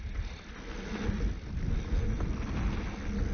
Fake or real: real